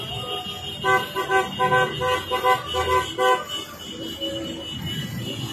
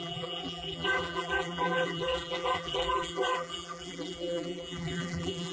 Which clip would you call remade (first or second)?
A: second